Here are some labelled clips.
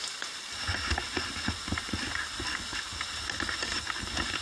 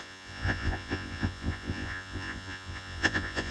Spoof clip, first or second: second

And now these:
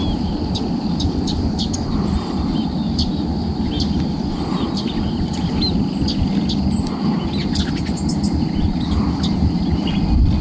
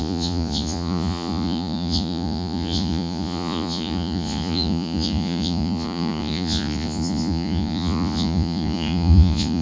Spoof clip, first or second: second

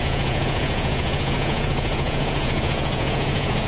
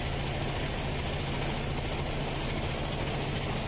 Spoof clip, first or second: first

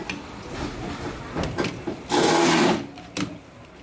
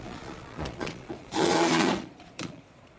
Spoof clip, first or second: second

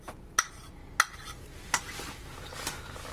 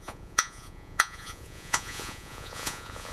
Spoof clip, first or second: second